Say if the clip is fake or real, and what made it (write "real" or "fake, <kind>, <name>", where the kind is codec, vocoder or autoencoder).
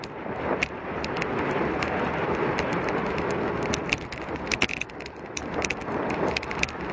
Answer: real